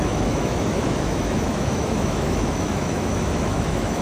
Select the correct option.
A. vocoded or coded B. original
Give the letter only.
A